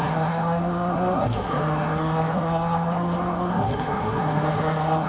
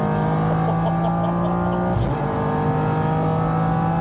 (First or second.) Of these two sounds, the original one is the second